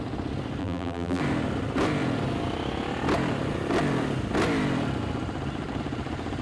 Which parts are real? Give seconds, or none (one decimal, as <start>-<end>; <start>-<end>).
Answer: 0.0-0.6; 1.2-6.4